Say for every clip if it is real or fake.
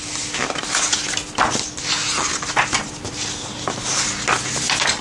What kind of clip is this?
real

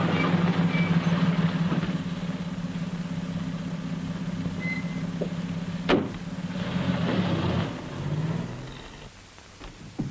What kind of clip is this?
real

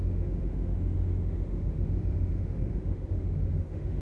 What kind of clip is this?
fake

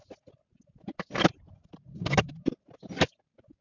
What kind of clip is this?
real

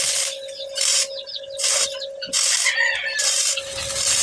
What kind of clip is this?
real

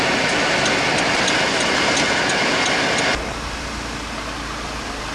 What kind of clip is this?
real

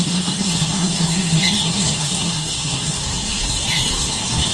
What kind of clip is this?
fake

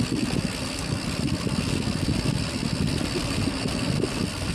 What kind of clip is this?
real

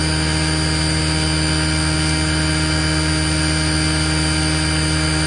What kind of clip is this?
real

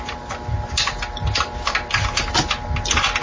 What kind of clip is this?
real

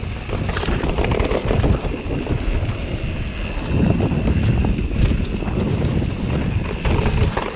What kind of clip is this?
real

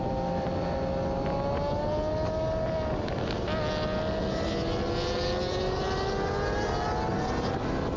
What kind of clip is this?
real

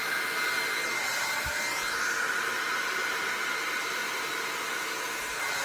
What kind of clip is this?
real